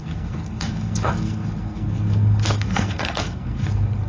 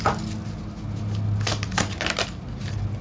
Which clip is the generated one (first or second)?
first